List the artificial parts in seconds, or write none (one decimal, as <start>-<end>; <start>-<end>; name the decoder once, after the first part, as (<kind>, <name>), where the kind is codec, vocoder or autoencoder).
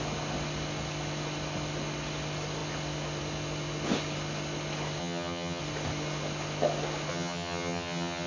5.0-5.6 (vocoder, HiFi-GAN); 7.1-8.3